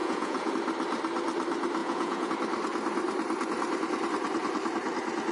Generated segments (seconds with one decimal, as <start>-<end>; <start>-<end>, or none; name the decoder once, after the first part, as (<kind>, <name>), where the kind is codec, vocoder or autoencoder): 0.0-0.5 (vocoder, Vocos); 1.8-2.3